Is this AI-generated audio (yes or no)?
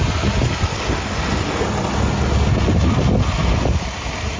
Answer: no